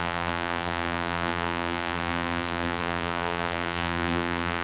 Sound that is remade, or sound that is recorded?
remade